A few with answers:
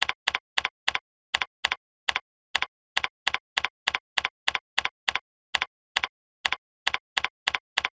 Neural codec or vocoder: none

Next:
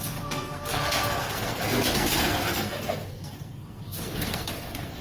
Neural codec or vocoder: codec, SNAC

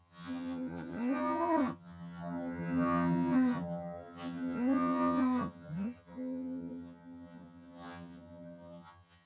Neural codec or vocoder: vocoder, HiFi-GAN